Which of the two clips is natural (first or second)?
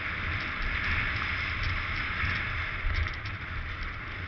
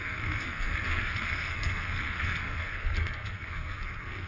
first